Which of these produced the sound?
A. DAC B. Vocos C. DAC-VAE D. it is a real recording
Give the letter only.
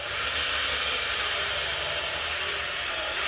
D